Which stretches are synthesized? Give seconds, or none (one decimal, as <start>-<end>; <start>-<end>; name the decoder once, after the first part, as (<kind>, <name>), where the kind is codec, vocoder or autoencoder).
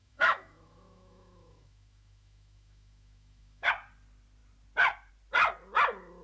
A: 0.0-3.7 (autoencoder, DAC-VAE)